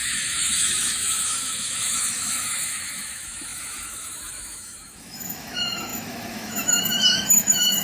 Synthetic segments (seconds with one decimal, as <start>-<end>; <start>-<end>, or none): 0.0-7.8